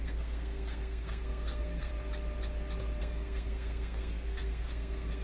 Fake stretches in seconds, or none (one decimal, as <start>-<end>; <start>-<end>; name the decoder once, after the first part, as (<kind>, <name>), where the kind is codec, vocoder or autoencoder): 0.0-1.9 (codec, SNAC); 3.0-5.2